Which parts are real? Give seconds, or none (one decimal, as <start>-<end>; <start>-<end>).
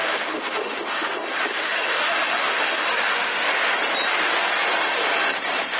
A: 3.5-5.8